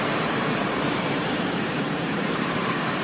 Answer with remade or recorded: remade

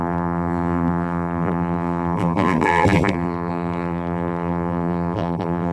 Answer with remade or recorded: remade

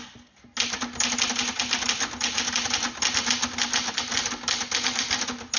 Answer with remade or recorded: recorded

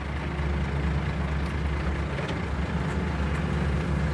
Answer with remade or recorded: recorded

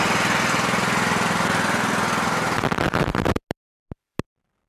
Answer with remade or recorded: recorded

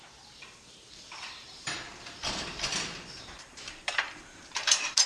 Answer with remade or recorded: remade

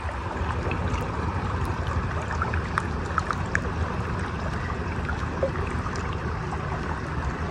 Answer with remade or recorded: recorded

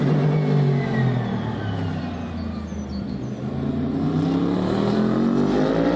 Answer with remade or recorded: recorded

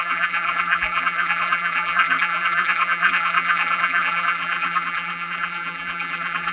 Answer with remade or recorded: remade